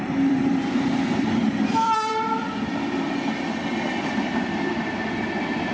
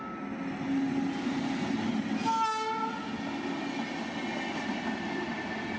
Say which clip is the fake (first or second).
first